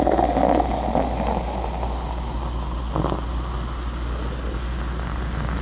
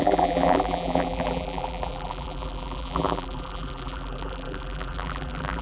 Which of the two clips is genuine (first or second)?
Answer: first